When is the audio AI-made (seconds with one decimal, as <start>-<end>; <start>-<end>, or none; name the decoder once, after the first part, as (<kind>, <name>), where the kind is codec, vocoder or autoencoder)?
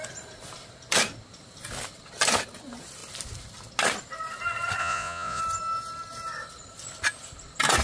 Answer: 4.8-5.4 (vocoder, Vocos)